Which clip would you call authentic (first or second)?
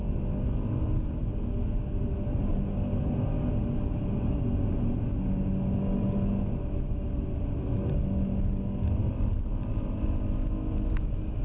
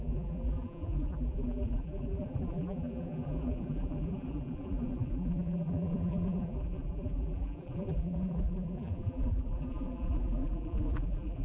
first